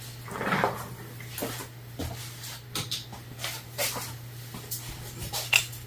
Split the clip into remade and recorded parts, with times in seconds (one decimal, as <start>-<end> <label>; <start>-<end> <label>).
0.0-5.9 recorded